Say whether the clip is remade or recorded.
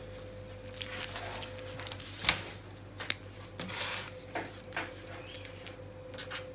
recorded